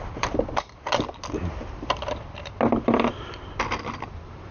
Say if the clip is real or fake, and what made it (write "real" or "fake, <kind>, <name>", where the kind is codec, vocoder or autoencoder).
real